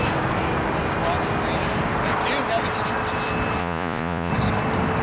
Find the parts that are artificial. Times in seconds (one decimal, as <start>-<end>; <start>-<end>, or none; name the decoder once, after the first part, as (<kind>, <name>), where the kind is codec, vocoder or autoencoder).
3.6-4.3 (vocoder, Vocos)